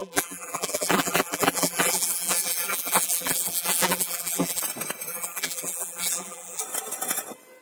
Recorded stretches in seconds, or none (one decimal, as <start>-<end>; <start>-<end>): 4.6-5.1; 6.6-7.6